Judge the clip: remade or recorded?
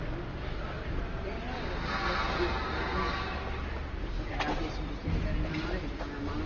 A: recorded